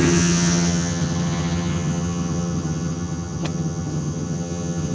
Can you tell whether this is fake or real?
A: fake